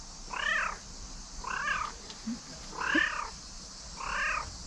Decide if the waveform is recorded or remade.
recorded